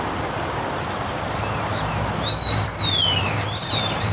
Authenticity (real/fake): fake